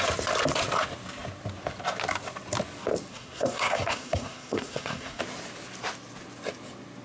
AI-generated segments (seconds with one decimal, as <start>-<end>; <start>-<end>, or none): 3.1-5.2